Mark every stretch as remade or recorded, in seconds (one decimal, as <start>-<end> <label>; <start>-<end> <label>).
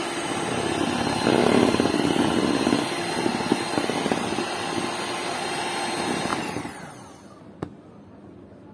0.0-1.4 recorded; 1.4-5.0 remade; 5.0-6.3 recorded; 6.3-8.1 remade; 8.1-8.7 recorded